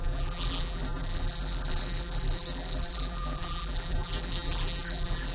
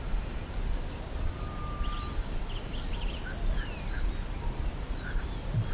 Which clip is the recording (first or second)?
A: second